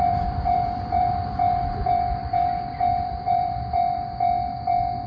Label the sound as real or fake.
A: fake